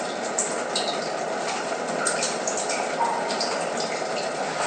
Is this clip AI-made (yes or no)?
no